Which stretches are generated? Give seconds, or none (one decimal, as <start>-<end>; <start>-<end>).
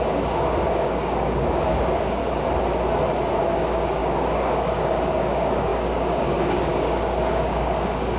0.0-2.2; 3.4-8.2